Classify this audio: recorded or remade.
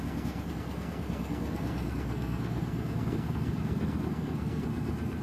remade